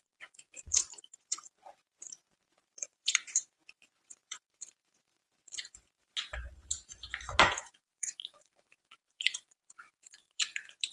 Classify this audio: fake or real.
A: fake